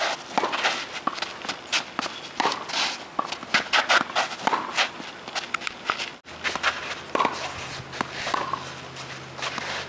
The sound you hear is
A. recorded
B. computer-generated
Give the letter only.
A